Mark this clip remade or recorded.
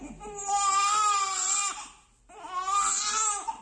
recorded